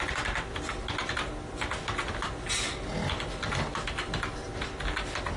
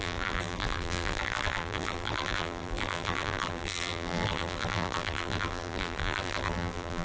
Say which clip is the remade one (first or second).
second